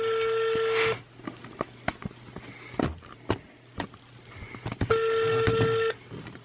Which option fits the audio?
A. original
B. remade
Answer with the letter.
A